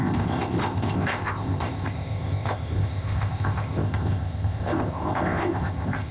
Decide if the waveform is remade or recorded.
remade